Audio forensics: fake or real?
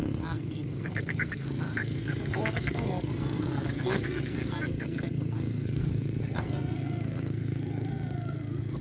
fake